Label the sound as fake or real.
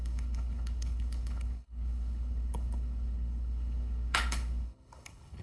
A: fake